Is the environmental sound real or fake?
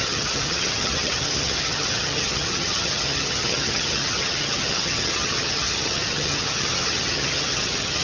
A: fake